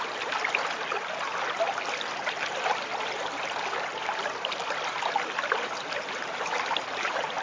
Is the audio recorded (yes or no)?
yes